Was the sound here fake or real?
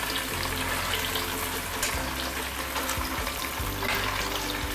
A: real